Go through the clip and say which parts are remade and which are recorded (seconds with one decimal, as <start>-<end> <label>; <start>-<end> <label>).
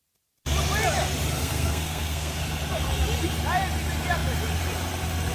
0.0-1.4 recorded; 1.4-2.4 remade; 2.4-5.3 recorded